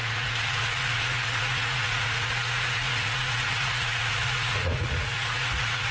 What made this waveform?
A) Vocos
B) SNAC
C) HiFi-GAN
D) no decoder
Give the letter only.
A